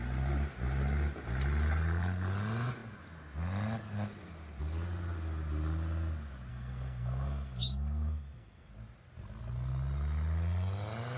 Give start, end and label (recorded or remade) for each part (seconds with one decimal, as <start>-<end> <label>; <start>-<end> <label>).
0.0-6.5 recorded; 6.5-8.7 remade; 8.7-11.2 recorded